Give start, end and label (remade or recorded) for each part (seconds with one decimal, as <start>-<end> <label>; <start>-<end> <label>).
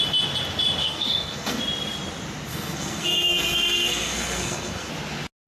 0.0-0.8 recorded; 0.8-1.6 remade; 1.6-2.5 recorded; 2.5-4.9 remade; 4.9-5.5 recorded